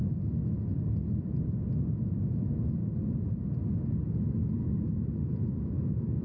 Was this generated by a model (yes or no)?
no